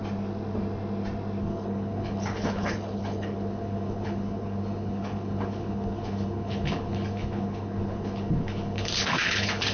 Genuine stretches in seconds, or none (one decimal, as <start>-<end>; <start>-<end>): 0.0-1.4